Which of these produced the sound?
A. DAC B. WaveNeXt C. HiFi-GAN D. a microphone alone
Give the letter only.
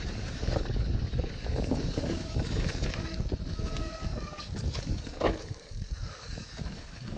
A